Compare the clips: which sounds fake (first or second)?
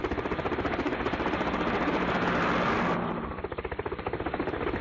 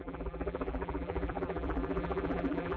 second